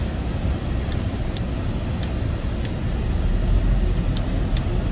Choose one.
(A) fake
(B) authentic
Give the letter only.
B